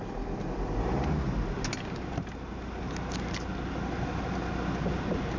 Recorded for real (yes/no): yes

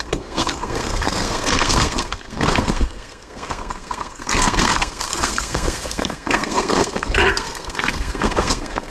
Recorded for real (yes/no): no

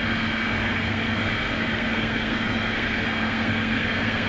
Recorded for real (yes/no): no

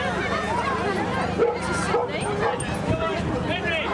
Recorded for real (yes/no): yes